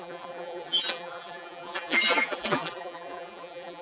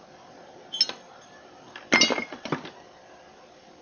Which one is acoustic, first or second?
second